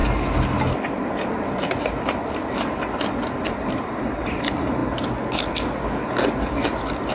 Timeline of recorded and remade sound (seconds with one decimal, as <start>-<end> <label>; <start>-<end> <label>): 0.0-7.1 recorded